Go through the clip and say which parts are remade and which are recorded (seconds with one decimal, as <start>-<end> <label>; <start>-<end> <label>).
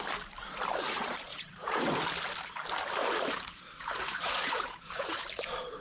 0.0-1.3 recorded; 1.3-1.9 remade; 1.9-3.0 recorded; 3.0-5.2 remade; 5.2-5.8 recorded